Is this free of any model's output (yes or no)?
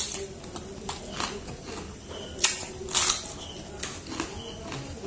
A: yes